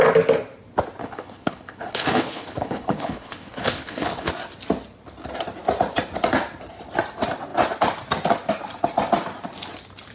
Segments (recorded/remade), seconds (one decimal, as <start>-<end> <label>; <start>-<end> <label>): 0.0-1.0 recorded; 1.0-4.3 remade; 4.3-10.1 recorded